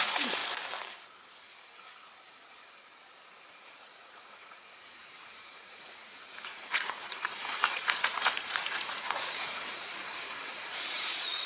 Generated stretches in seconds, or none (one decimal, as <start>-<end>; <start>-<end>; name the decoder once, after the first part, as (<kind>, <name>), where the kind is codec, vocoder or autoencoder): 0.0-0.4 (vocoder, Vocos); 3.5-11.5